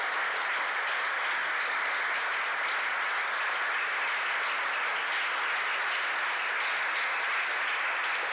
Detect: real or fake real